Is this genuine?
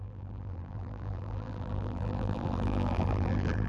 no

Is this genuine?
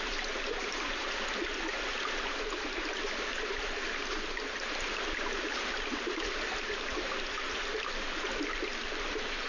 no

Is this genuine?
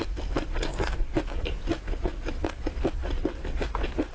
yes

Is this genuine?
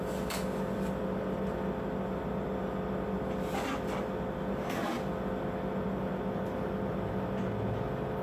yes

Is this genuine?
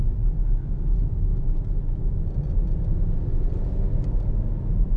yes